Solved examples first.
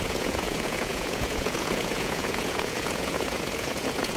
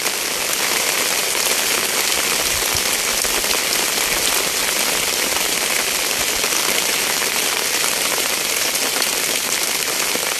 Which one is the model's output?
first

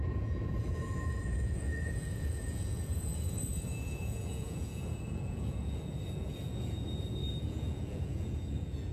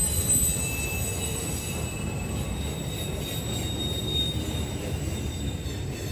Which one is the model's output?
first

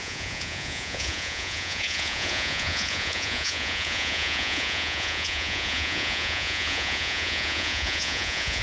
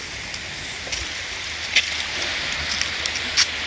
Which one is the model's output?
first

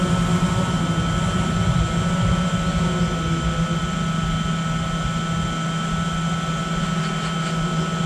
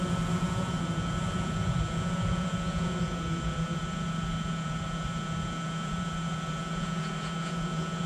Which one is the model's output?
second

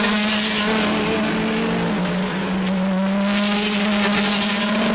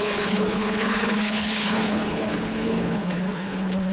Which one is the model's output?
second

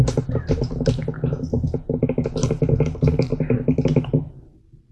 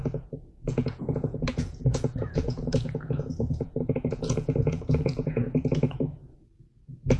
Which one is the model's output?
second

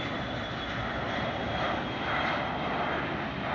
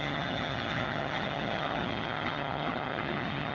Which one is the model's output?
second